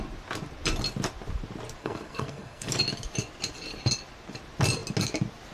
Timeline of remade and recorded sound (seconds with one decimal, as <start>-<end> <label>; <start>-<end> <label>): 0.0-1.8 recorded; 1.8-2.7 remade; 2.7-5.5 recorded